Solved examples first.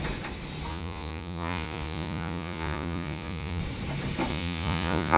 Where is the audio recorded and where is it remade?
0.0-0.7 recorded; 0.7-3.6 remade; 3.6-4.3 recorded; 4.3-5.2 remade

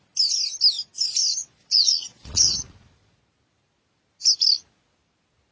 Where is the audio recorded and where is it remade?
0.0-1.4 recorded; 1.4-3.2 remade; 3.2-5.5 recorded

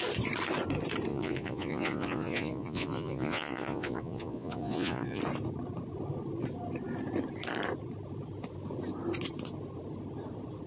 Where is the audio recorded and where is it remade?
0.0-1.1 recorded; 1.1-5.2 remade; 5.2-10.7 recorded

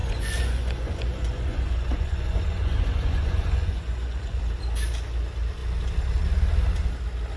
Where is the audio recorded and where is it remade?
0.0-4.4 remade; 4.4-7.4 recorded

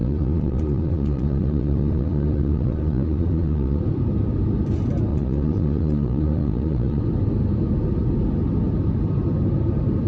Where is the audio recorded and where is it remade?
0.0-3.8 remade; 3.8-5.1 recorded; 5.1-7.0 remade; 7.0-10.1 recorded

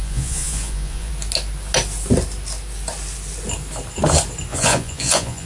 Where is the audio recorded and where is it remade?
0.0-1.1 remade; 1.1-4.5 recorded; 4.5-5.5 remade

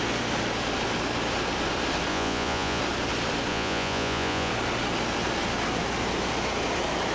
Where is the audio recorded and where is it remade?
0.0-2.1 recorded; 2.1-2.8 remade; 2.8-3.5 recorded; 3.5-4.5 remade; 4.5-7.1 recorded